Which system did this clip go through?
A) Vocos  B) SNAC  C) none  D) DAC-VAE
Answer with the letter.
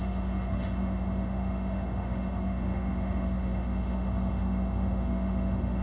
D